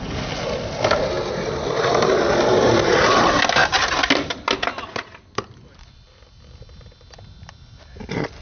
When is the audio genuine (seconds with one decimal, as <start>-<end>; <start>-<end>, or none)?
0.0-8.4